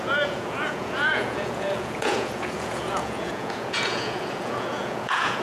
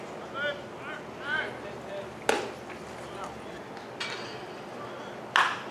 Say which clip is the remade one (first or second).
first